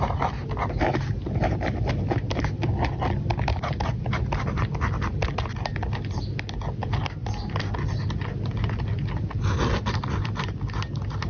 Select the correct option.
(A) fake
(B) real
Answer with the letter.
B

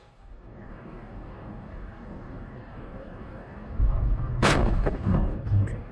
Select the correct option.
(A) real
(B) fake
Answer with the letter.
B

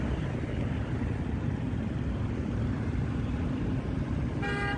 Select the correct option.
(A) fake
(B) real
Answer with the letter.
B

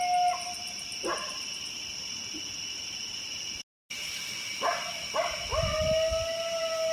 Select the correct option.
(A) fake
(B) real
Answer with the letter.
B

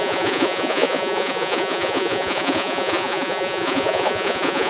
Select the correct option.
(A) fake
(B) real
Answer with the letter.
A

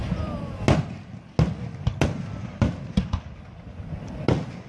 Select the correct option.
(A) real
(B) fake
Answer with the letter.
A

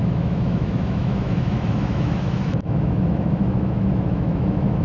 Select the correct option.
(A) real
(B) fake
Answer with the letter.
B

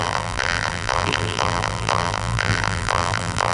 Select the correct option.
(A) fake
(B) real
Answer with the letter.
A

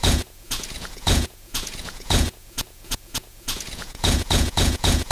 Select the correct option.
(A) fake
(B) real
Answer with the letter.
A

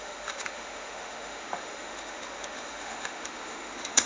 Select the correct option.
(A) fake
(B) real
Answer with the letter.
A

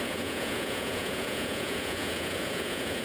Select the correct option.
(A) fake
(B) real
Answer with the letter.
A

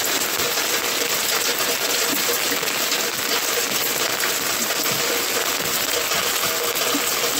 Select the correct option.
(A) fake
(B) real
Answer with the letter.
B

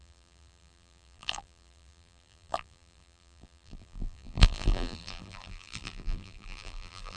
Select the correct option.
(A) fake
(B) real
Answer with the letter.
A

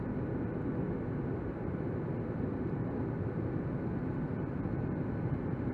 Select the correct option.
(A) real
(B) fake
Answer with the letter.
A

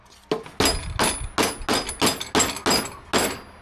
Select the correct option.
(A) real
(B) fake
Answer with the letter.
A